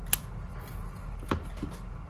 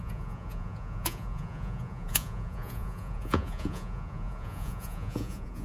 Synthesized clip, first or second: second